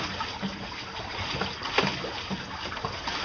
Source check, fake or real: real